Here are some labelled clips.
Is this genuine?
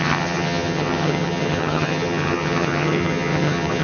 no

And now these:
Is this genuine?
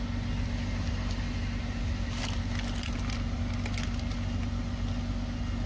yes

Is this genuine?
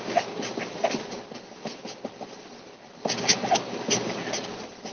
yes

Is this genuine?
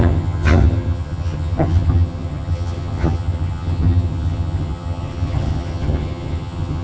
no